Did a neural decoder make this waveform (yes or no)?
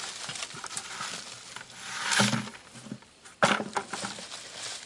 no